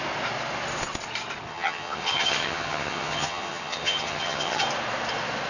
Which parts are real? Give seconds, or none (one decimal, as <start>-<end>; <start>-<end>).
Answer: 0.0-1.5; 4.6-5.5